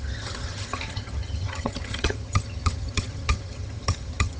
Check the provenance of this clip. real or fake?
fake